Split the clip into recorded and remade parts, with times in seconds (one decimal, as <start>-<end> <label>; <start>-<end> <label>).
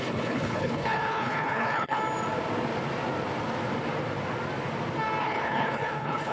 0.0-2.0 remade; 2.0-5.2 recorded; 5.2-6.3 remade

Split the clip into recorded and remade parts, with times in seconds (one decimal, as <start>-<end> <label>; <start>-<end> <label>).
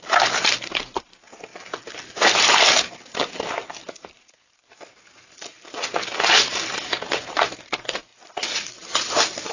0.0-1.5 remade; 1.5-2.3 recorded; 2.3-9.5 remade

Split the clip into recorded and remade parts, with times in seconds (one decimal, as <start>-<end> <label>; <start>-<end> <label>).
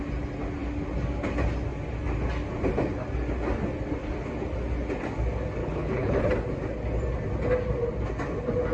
0.0-5.6 recorded; 5.6-6.2 remade; 6.2-8.7 recorded